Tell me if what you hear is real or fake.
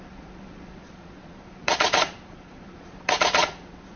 fake